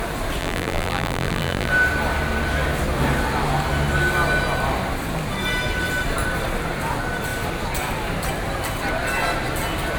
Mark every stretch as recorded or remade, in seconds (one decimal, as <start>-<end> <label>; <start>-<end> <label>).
0.0-0.4 recorded; 0.4-1.7 remade; 1.7-10.0 recorded